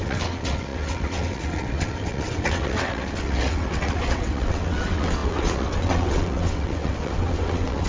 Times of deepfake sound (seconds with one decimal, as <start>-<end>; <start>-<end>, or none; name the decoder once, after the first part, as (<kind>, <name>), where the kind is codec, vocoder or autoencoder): 0.0-7.9 (vocoder, WaveNeXt)